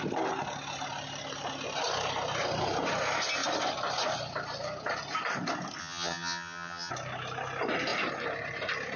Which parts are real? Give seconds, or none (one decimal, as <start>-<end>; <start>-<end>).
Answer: 0.0-5.8; 6.9-9.0